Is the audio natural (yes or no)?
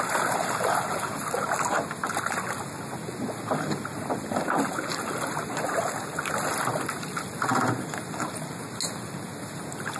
yes